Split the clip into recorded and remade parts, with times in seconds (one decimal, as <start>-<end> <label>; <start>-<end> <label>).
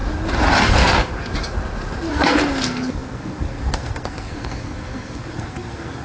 0.0-0.7 recorded; 0.7-1.3 remade; 1.3-2.1 recorded; 2.1-6.0 remade